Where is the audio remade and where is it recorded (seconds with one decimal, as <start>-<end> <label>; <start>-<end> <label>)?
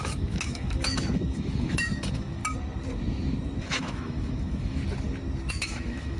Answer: 0.0-2.4 remade; 2.4-3.6 recorded; 3.6-4.8 remade; 4.8-5.5 recorded; 5.5-6.2 remade